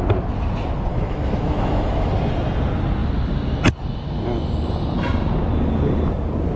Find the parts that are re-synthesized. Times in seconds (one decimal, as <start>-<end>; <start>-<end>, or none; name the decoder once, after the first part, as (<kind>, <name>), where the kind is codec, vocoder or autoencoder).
0.9-2.1 (autoencoder, DAC-VAE)